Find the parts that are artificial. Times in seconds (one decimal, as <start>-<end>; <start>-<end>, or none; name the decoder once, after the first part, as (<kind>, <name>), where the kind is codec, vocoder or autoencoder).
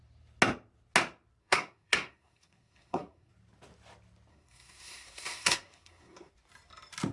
1.4-3.3 (codec, SNAC); 4.3-6.3